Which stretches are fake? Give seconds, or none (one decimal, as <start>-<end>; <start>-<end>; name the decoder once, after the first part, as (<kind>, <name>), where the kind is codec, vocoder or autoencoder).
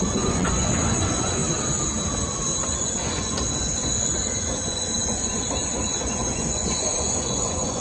0.0-1.4 (vocoder, Vocos); 2.6-7.8